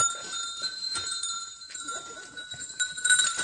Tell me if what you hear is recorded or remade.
remade